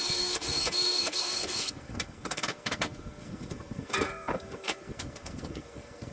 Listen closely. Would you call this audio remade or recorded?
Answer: remade